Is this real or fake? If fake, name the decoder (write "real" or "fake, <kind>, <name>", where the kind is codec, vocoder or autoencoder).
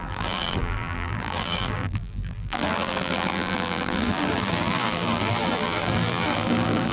fake, vocoder, BigVGAN v2